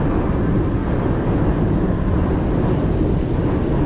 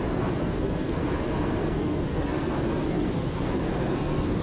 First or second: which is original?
first